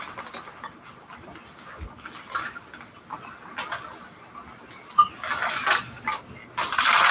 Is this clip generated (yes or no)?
no